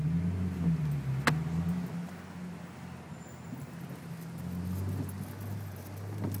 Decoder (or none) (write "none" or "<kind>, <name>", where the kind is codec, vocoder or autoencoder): none